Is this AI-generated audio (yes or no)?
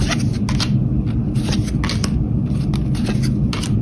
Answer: no